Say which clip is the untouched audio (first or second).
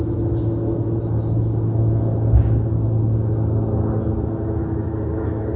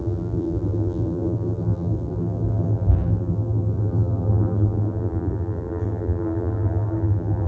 first